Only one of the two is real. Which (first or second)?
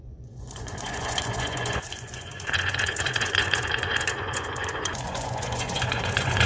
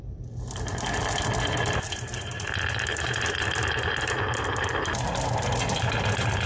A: second